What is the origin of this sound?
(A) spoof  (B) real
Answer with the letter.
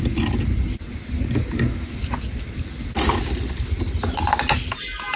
B